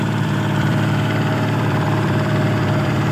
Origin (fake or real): fake